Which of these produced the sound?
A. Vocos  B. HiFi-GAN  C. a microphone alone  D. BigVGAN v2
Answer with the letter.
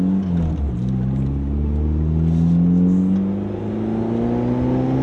C